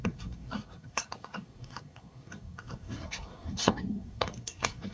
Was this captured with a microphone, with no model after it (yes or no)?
no